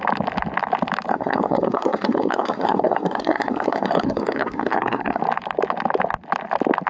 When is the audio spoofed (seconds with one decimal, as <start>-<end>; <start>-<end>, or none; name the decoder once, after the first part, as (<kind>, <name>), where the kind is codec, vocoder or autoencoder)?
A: 1.1-5.2 (codec, SNAC)